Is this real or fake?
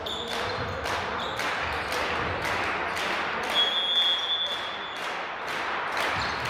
real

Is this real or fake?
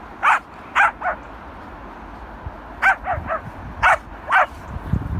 real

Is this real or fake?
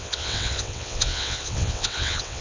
fake